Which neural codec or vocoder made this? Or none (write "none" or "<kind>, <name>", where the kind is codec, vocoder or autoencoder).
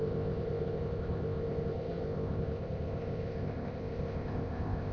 codec, ZipCodec